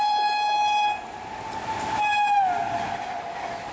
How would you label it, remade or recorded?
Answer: recorded